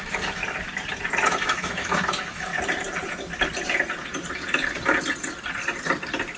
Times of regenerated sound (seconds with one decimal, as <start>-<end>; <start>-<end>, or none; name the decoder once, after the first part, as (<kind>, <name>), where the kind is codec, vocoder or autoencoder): 0.0-0.4 (autoencoder, DAC-VAE); 1.3-2.5